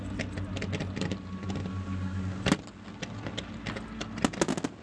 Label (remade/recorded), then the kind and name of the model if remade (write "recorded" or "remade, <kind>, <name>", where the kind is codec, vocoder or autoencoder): recorded